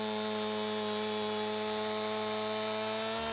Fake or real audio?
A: real